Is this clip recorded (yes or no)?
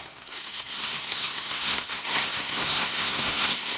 no